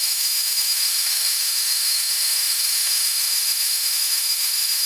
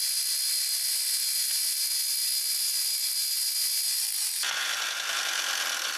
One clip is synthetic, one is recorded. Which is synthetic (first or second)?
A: first